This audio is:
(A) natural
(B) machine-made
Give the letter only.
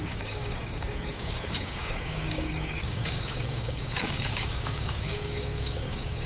B